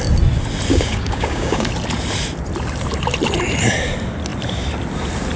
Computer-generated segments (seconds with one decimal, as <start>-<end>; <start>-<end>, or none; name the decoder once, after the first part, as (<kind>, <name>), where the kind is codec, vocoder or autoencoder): 0.7-1.7 (codec, DAC)